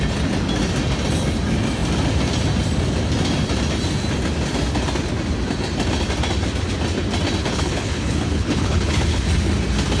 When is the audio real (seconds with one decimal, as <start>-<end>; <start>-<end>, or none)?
0.0-7.4; 9.2-10.0